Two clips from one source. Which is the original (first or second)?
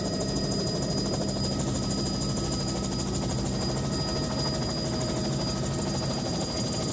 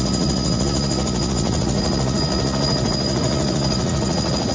first